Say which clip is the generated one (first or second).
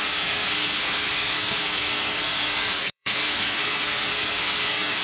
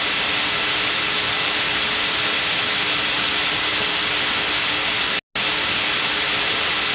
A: first